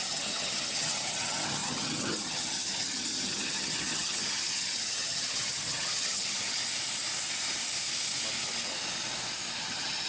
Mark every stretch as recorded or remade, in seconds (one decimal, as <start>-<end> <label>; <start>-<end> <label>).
0.0-6.6 remade; 6.6-9.6 recorded; 9.6-10.1 remade